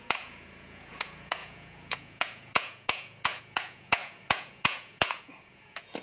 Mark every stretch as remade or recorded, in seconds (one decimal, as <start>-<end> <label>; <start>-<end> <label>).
0.0-6.0 remade